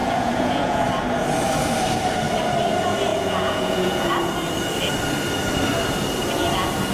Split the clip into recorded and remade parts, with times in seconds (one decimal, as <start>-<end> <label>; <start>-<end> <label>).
0.0-0.8 remade; 0.8-3.1 recorded; 3.1-4.1 remade; 4.1-6.9 recorded